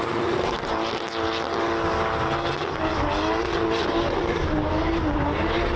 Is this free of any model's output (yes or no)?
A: yes